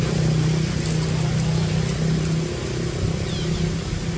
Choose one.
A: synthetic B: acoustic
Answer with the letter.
B